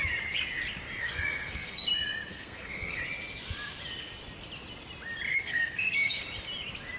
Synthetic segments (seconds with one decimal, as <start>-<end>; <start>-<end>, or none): 1.0-1.9; 2.3-3.0; 5.3-6.2